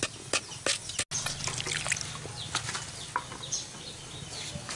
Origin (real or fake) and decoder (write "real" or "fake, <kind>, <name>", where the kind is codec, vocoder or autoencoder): real